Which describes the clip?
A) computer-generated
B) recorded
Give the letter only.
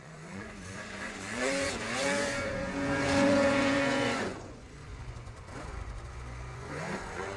A